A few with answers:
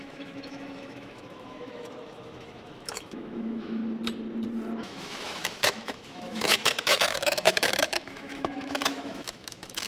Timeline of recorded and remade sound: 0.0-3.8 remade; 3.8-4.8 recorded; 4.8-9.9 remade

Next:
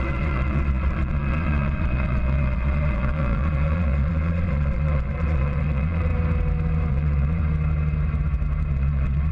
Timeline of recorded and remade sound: 0.0-6.1 remade; 6.1-6.9 recorded; 6.9-7.4 remade; 7.4-8.7 recorded; 8.7-9.3 remade